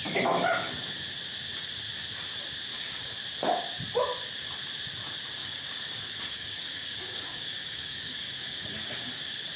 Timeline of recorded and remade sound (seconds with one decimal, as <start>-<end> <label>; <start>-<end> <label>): 0.0-2.7 recorded; 2.7-3.2 remade; 3.2-5.4 recorded; 5.4-9.1 remade; 9.1-9.6 recorded